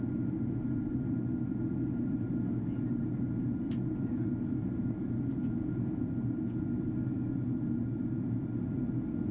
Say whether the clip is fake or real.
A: real